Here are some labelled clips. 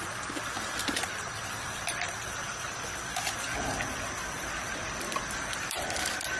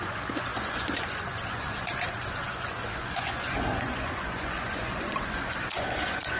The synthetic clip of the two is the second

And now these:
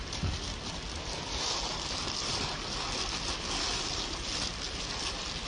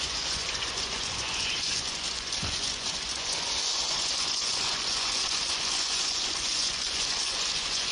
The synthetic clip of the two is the second